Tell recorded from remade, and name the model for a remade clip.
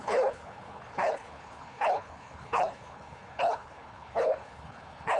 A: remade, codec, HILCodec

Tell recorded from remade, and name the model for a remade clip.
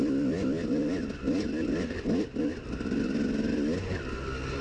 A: recorded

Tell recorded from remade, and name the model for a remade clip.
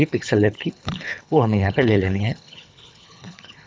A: remade, codec, HILCodec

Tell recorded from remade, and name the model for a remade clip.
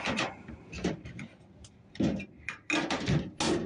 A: recorded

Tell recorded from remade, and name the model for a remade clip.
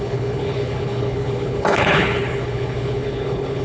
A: remade, codec, HILCodec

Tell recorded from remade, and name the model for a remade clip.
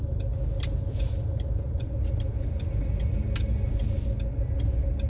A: recorded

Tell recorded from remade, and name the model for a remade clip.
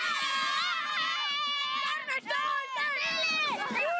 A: recorded